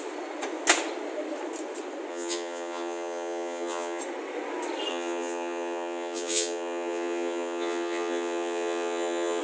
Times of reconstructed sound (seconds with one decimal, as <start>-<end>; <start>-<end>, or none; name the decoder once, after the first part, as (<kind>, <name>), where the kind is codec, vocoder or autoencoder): 2.1-4.0 (vocoder, HiFi-GAN); 4.9-9.4

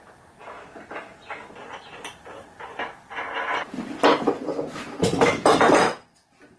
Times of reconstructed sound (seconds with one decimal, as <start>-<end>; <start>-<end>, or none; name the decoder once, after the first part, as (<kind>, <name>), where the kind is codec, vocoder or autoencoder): 4.5-5.3 (vocoder, BigVGAN v2)